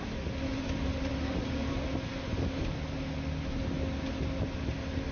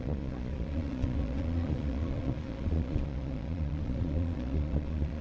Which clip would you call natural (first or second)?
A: first